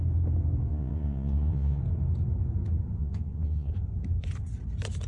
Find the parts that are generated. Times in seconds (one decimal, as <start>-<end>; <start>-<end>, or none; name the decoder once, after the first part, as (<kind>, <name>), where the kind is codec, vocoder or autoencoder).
0.7-1.8 (vocoder, Vocos); 3.0-3.7